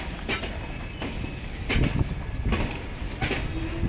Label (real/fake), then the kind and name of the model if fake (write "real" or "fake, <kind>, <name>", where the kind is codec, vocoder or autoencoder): real